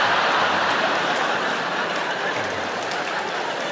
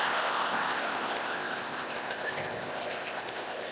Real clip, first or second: first